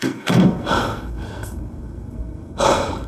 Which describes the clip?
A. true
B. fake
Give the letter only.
B